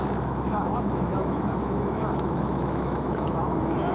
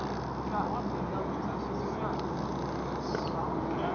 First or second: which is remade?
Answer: first